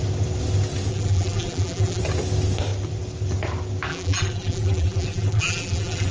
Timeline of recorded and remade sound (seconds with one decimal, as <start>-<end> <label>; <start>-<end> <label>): 0.0-0.9 recorded; 0.9-2.0 remade; 2.0-3.9 recorded; 3.9-6.1 remade